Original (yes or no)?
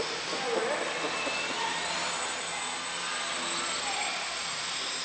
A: yes